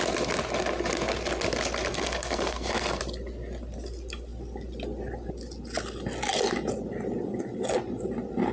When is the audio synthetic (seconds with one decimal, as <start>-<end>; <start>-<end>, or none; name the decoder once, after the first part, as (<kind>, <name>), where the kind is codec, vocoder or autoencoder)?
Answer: 1.9-3.0 (codec, SNAC)